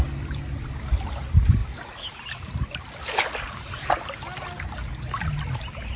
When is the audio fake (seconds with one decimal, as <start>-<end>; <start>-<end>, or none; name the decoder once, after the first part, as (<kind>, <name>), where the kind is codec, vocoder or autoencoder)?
none